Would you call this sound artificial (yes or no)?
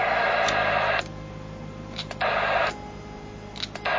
no